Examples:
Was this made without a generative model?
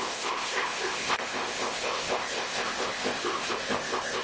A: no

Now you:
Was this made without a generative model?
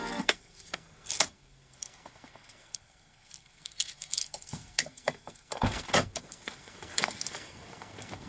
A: no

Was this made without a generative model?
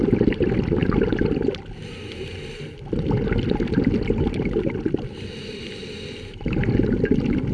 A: yes